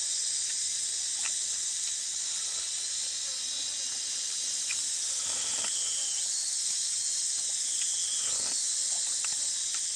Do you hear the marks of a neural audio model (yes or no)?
no